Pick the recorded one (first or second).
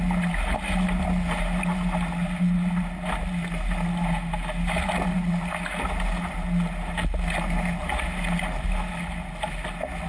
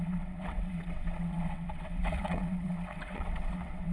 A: first